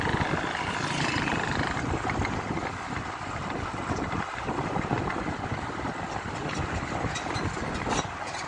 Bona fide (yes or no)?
yes